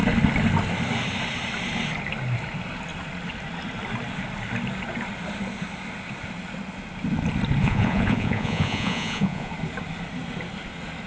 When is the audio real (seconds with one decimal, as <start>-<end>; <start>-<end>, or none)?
0.0-7.6; 9.5-11.1